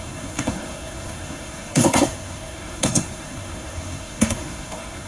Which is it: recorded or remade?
remade